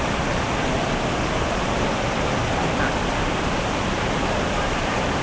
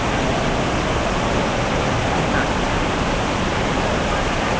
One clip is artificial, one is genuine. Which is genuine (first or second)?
second